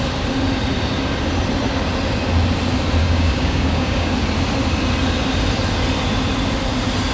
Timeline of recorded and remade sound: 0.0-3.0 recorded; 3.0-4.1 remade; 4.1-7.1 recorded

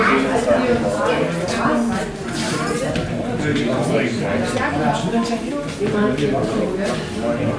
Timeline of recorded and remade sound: 0.0-7.6 recorded

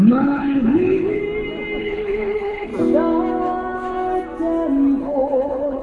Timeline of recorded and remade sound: 0.0-1.2 remade; 1.2-1.8 recorded; 1.8-2.7 remade; 2.7-5.0 recorded; 5.0-5.8 remade

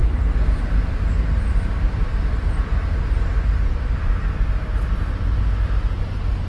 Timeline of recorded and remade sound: 0.0-6.5 recorded

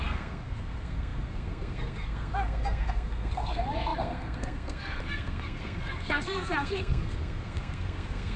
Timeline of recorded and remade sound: 0.0-8.4 remade

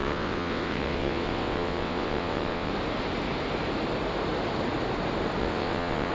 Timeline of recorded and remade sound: 0.0-2.7 remade; 2.7-5.4 recorded; 5.4-6.1 remade